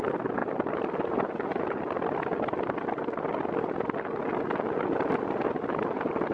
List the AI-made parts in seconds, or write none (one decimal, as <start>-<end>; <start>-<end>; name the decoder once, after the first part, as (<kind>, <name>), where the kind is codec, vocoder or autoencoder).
none